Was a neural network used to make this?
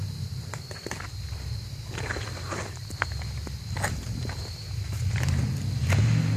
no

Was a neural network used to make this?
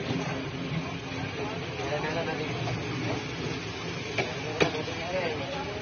no